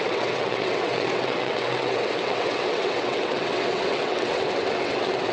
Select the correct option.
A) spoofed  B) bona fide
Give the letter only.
A